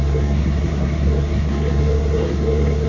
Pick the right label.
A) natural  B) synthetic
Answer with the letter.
B